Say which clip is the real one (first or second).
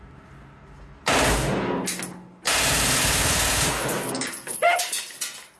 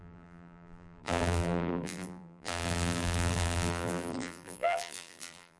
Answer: first